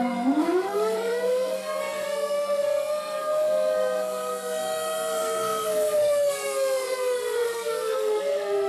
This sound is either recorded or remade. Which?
remade